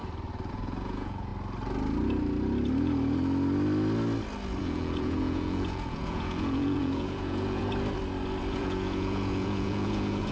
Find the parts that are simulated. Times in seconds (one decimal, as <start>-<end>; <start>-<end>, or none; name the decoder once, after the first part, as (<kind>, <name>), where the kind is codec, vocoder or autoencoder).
0.5-1.3 (vocoder, Vocos); 4.6-7.6; 8.5-10.3